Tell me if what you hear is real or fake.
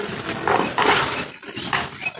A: real